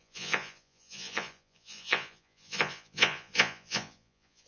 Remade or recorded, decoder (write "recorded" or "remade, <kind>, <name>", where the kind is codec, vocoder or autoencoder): remade, vocoder, Vocos